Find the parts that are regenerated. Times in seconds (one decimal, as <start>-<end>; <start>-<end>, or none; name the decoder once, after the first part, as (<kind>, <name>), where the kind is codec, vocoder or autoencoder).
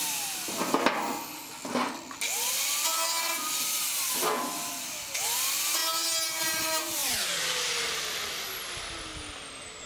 none